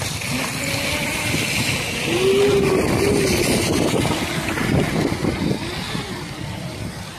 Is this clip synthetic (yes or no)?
no